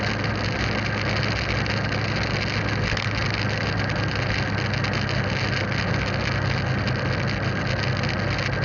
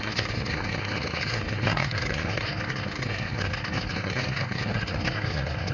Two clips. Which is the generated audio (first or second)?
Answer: second